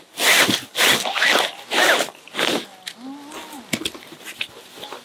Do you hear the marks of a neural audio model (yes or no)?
no